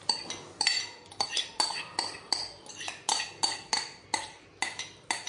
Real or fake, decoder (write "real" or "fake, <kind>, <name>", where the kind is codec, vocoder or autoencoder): real